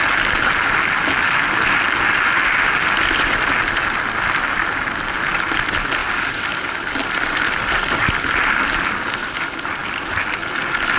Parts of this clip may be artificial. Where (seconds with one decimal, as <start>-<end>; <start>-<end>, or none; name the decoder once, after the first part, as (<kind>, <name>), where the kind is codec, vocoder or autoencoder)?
6.0-8.8 (vocoder, BigVGAN v2)